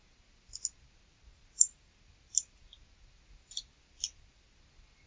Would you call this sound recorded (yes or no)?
yes